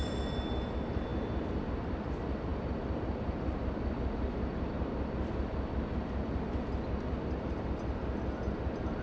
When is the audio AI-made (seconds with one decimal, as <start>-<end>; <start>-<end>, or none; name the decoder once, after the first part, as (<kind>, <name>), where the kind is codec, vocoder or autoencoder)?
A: none